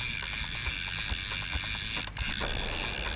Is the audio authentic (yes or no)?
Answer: yes